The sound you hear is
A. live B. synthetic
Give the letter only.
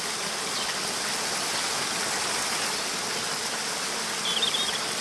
A